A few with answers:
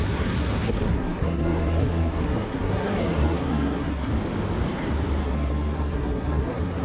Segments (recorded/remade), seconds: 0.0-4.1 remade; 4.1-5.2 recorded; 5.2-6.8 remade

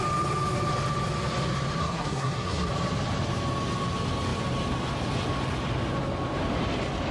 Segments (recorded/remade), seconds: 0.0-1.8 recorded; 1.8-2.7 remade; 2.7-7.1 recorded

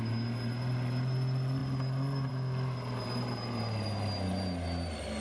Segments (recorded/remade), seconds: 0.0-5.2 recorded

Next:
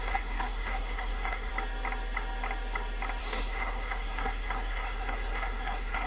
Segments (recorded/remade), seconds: 0.0-1.5 remade; 1.5-3.2 recorded; 3.2-6.1 remade